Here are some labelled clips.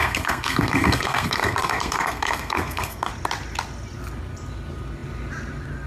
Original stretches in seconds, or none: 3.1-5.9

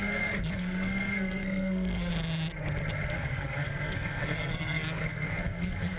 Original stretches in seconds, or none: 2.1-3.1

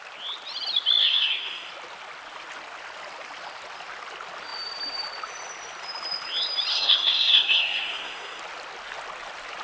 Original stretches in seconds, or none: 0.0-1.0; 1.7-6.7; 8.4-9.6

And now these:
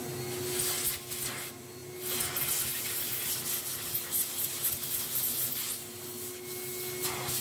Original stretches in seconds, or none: 0.0-7.4

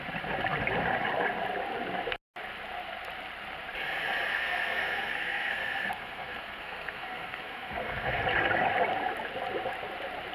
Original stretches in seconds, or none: 0.0-4.3; 8.2-10.3

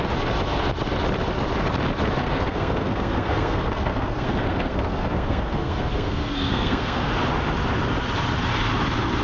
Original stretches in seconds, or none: 0.0-2.2; 7.1-9.2

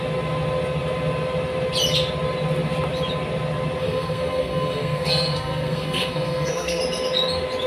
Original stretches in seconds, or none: 0.0-3.8; 6.8-7.7

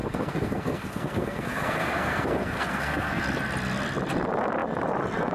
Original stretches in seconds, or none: 3.2-5.3